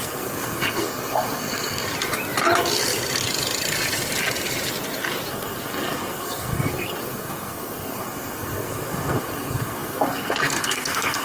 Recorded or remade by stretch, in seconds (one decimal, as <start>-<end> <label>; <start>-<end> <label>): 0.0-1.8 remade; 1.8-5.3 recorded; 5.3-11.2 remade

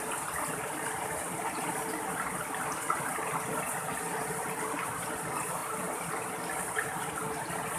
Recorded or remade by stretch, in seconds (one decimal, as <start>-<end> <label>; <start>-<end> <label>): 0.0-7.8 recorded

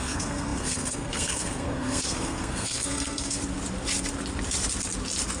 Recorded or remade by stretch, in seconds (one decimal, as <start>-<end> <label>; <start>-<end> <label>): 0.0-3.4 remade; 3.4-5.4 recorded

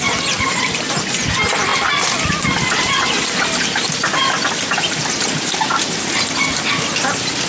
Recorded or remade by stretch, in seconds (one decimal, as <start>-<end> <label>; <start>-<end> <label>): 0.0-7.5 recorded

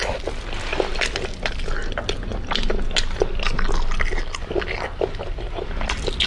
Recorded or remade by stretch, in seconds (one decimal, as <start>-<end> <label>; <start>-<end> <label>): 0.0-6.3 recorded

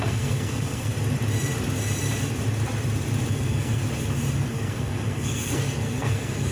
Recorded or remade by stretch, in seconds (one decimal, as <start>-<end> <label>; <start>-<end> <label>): 0.0-0.9 remade; 0.9-3.3 recorded; 3.3-3.8 remade; 3.8-4.5 recorded; 4.5-6.5 remade

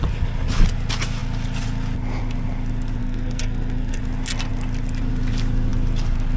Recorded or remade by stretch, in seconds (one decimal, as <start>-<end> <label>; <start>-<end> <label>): 0.0-3.0 recorded; 3.0-4.0 remade; 4.0-6.4 recorded